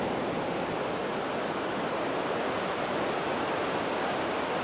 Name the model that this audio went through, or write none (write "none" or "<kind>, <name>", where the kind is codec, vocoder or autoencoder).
none